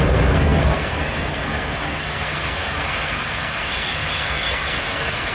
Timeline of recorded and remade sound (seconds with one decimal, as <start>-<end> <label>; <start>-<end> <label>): 0.0-5.3 remade